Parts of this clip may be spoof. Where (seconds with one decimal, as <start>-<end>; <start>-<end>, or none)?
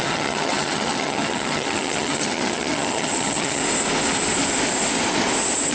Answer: 0.0-3.6